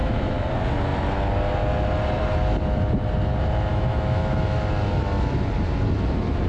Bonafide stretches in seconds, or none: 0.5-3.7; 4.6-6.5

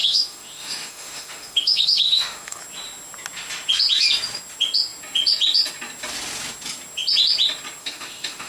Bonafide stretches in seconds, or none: 2.6-7.8